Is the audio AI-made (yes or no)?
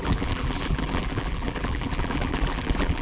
yes